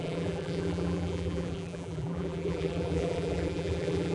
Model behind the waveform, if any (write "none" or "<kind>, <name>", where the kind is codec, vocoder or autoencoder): vocoder, BigVGAN v2